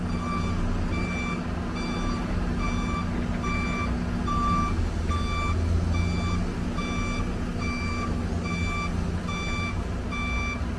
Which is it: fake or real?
real